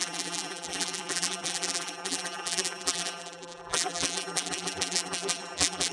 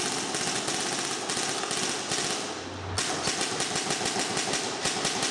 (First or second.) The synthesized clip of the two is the first